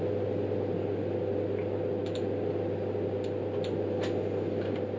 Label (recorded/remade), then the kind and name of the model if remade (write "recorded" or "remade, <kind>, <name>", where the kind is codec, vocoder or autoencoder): recorded